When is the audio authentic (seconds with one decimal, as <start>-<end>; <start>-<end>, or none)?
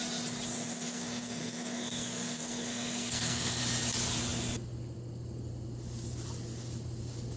0.0-0.7; 3.6-7.4